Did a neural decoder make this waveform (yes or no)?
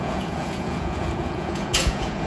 yes